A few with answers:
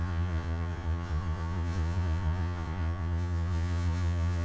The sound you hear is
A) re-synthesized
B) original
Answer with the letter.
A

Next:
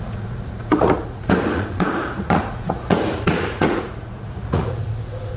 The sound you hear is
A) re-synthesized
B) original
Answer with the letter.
A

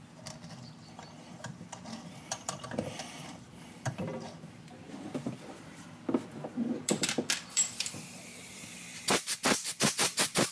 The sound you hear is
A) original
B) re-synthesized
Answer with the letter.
B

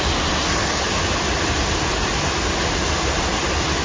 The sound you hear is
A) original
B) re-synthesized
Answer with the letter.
A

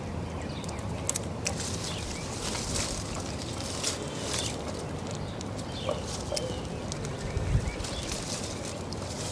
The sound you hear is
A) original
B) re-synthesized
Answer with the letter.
A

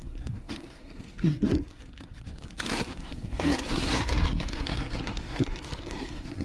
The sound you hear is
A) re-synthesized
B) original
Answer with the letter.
A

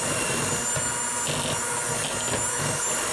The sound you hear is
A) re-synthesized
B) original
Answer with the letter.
B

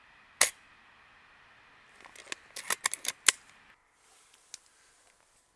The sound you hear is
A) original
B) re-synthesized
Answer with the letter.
A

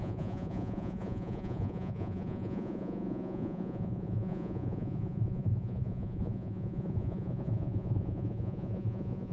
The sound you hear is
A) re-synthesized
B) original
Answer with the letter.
A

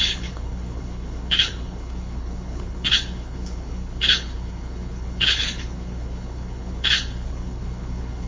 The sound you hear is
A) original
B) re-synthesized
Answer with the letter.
B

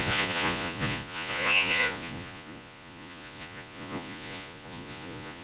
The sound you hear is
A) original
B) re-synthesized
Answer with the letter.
B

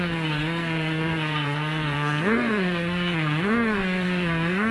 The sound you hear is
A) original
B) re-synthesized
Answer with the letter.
B